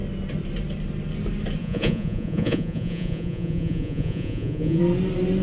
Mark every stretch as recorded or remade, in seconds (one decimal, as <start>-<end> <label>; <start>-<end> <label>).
0.0-1.6 recorded; 1.6-4.8 remade; 4.8-5.4 recorded